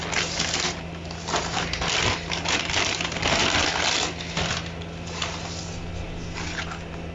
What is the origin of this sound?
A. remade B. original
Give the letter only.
B